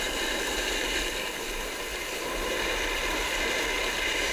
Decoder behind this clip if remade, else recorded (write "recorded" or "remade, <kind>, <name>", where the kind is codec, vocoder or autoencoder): recorded